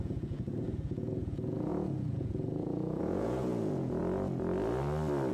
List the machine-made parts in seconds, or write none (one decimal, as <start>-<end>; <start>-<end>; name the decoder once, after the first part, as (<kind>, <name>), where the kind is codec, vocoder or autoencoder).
0.0-4.0 (vocoder, Vocos)